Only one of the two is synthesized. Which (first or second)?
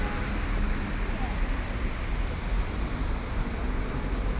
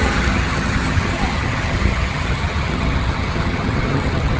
second